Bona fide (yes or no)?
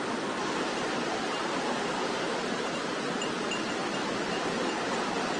no